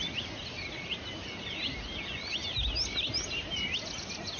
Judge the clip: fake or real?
real